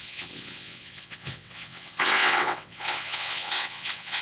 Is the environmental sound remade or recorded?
remade